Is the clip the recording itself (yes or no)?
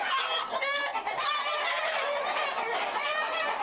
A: yes